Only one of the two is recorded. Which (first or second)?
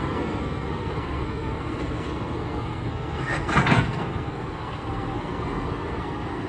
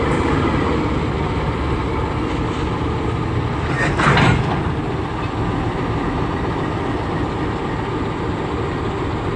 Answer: second